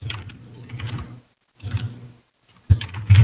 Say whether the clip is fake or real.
real